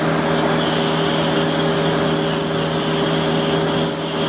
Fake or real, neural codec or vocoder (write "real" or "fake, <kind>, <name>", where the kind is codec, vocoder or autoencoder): real